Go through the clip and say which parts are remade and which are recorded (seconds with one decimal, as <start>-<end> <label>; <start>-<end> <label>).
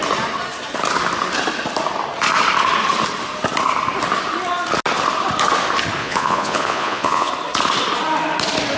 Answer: 0.0-6.0 recorded; 6.0-7.3 remade; 7.3-8.8 recorded